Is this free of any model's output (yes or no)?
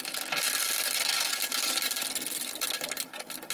yes